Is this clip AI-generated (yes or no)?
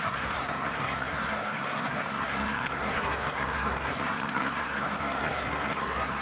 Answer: yes